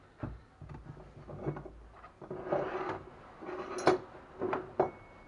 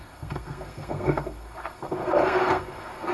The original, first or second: first